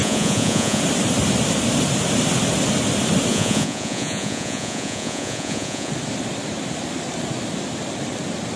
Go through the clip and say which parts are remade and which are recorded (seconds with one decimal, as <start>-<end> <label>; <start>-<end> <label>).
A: 0.0-0.8 remade; 0.8-3.3 recorded; 3.3-5.9 remade; 5.9-8.6 recorded